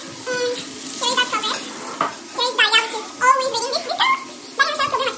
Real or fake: real